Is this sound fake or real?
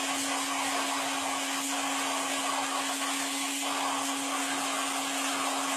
real